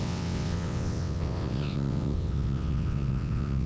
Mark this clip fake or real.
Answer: fake